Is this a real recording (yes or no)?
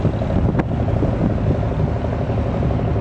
yes